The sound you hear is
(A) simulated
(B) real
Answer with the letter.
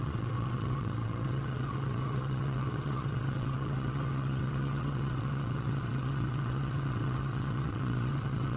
A